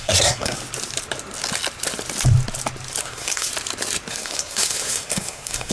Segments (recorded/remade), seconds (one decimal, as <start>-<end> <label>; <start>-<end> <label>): 0.0-0.6 remade; 0.6-3.0 recorded; 3.0-3.5 remade; 3.5-4.1 recorded; 4.1-5.7 remade